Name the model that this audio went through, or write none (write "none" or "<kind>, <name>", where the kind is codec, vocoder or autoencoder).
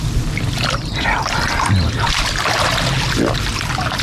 none